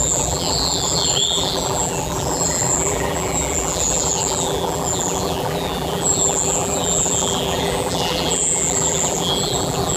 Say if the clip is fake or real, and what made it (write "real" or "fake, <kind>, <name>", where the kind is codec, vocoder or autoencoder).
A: fake, vocoder, BigVGAN v2